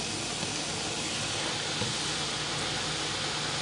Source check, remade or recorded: recorded